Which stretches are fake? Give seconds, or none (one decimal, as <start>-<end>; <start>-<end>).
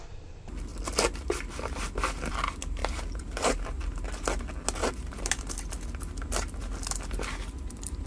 2.8-3.8; 4.8-5.3